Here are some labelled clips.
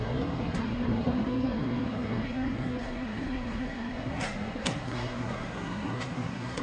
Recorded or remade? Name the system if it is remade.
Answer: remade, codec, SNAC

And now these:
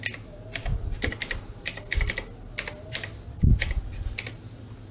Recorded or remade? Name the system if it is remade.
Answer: recorded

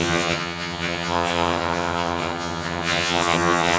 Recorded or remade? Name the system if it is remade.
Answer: remade, vocoder, HiFi-GAN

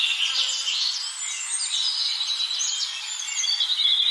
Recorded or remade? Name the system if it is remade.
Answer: recorded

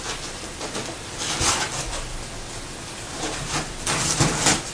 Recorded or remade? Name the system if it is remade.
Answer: recorded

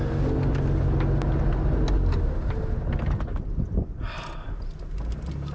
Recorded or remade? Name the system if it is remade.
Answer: recorded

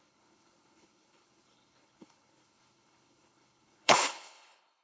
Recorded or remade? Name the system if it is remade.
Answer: remade, codec, HILCodec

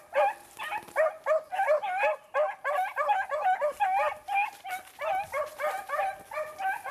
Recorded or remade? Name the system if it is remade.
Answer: recorded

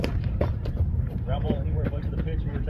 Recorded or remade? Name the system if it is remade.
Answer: remade, vocoder, BigVGAN v2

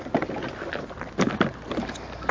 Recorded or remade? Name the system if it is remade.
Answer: recorded